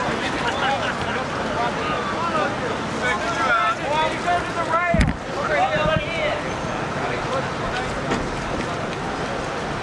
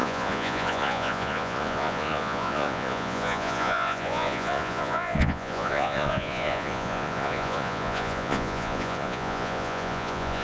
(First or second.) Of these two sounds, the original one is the first